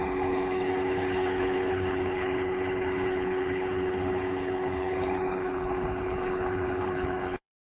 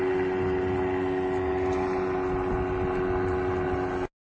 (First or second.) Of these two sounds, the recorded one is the second